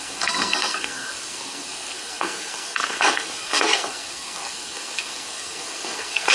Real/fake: fake